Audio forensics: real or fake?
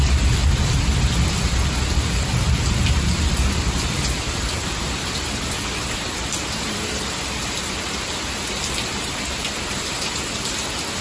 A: fake